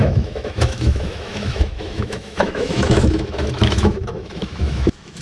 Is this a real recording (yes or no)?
no